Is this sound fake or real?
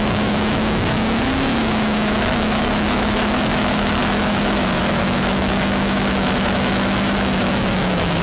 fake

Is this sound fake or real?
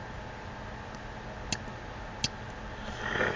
real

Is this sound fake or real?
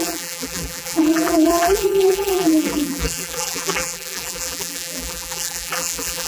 fake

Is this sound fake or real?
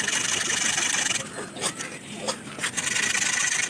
real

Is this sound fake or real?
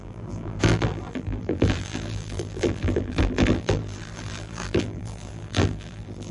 fake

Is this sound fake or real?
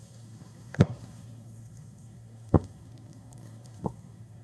fake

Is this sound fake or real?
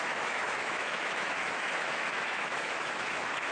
fake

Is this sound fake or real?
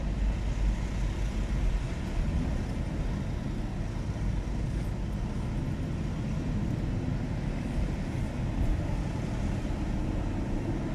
real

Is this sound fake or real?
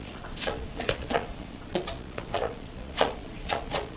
fake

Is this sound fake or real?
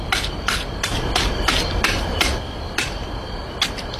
real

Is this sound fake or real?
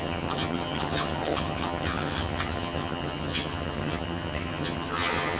fake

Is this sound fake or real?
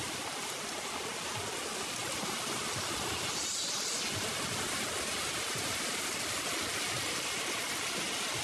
real